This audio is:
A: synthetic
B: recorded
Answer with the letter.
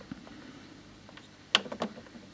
B